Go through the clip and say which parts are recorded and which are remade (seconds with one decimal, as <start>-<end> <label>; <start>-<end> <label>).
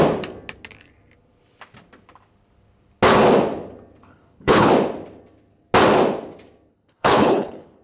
0.0-4.1 recorded; 4.1-4.7 remade; 4.7-6.7 recorded; 6.7-7.8 remade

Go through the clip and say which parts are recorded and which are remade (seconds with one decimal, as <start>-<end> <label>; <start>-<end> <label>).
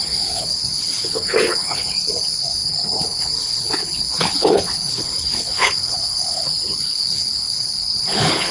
0.0-8.5 remade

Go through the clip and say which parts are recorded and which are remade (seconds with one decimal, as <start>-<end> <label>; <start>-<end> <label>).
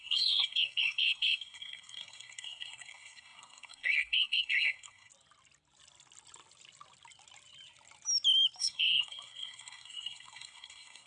0.0-5.1 remade; 5.1-8.6 recorded; 8.6-11.1 remade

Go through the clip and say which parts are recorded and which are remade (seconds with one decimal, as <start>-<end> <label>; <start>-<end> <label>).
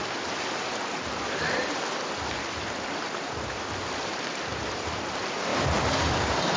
0.0-5.5 remade; 5.5-6.1 recorded; 6.1-6.6 remade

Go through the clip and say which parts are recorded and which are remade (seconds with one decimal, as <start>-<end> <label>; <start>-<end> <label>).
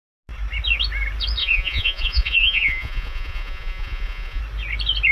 0.0-1.4 recorded; 1.4-4.4 remade; 4.4-5.1 recorded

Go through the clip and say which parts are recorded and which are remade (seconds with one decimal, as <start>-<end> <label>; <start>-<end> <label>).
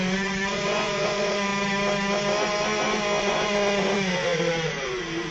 0.0-1.5 remade; 1.5-3.2 recorded; 3.2-5.3 remade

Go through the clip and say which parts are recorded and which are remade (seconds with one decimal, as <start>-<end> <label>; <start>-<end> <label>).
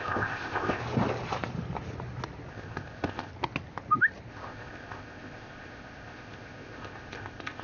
0.0-0.8 remade; 0.8-2.5 recorded; 2.5-3.3 remade; 3.3-4.3 recorded; 4.3-7.6 remade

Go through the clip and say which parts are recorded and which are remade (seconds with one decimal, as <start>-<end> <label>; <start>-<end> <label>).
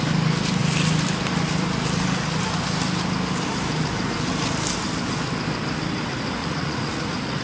0.0-6.4 recorded; 6.4-7.4 remade